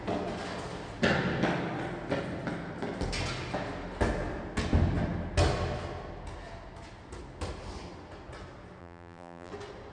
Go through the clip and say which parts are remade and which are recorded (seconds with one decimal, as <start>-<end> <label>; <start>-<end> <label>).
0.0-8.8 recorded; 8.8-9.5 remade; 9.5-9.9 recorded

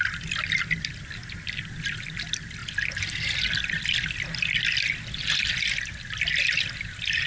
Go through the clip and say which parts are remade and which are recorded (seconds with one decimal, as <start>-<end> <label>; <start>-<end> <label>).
0.0-7.3 recorded

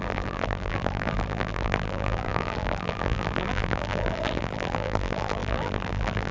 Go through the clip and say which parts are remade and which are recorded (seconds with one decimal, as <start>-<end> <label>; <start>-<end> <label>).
0.0-6.3 remade